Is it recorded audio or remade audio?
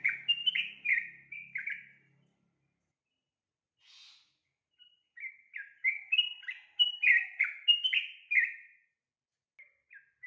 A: recorded